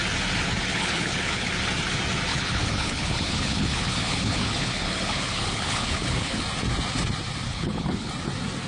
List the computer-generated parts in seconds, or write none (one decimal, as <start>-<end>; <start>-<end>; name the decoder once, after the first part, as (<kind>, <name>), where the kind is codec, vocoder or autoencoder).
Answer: 0.7-1.5 (codec, HILCodec); 2.3-6.4; 7.5-8.1